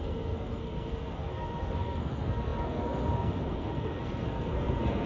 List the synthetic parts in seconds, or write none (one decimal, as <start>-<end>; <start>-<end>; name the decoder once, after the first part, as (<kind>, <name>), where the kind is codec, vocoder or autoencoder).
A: 0.0-5.1 (codec, SNAC)